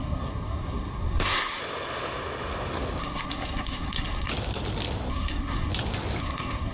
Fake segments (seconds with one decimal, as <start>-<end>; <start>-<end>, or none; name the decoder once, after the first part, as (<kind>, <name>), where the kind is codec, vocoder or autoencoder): 0.0-1.6 (codec, SNAC); 3.0-4.3; 5.1-5.7; 6.2-6.7